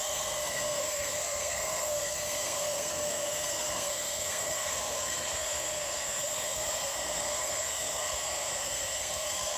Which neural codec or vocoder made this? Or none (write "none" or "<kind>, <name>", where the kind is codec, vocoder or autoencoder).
codec, SNAC